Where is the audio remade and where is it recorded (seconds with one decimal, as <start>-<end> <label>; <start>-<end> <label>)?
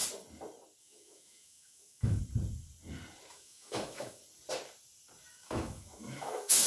0.0-0.8 recorded; 0.8-2.2 remade; 2.2-3.3 recorded; 3.3-4.2 remade; 4.2-5.3 recorded; 5.3-6.7 remade